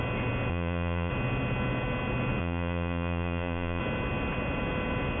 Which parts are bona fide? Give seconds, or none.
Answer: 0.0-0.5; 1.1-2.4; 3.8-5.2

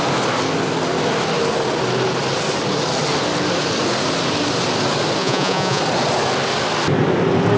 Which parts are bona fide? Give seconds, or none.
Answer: 0.0-5.2; 5.8-7.6